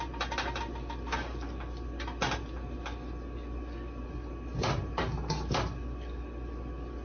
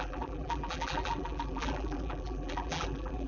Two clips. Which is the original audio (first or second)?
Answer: first